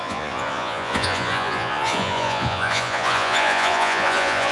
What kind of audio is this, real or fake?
fake